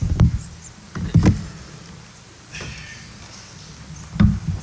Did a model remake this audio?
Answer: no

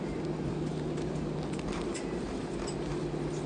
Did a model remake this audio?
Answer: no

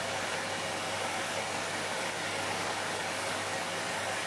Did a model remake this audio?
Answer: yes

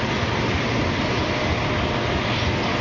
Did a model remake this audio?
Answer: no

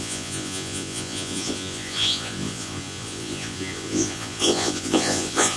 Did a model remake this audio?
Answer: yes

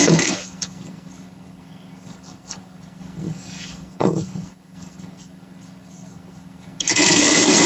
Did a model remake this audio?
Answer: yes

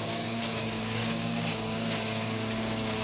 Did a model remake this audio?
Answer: yes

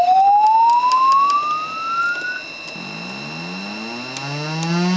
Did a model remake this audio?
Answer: no